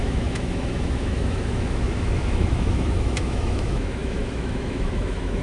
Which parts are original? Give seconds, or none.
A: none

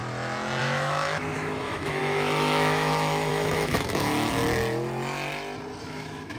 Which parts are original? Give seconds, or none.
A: 0.0-0.6; 4.4-5.8

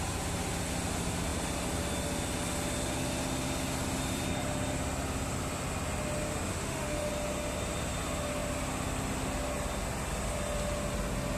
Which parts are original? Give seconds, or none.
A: 0.0-6.5; 7.1-11.4

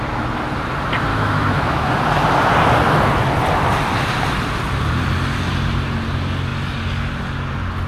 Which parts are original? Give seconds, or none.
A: 0.0-1.1; 1.9-7.9

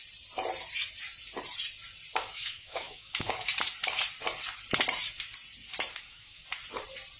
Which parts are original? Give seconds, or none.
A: 0.0-2.1; 3.3-5.9; 6.5-7.2

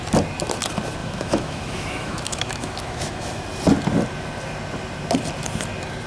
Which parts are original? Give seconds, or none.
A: 0.0-1.0; 3.4-6.1

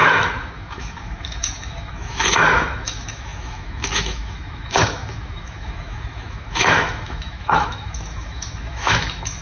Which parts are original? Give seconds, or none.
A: none

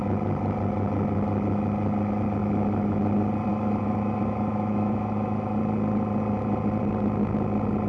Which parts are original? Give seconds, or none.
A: 0.0-2.4; 3.0-3.5; 5.6-7.9